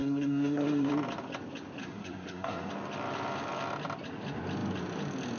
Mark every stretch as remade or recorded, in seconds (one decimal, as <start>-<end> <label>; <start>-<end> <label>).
0.0-0.9 remade; 0.9-1.8 recorded; 1.8-2.7 remade; 2.7-5.4 recorded